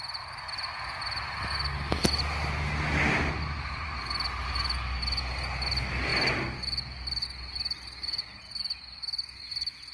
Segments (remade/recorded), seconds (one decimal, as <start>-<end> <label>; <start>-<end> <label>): 0.0-9.9 recorded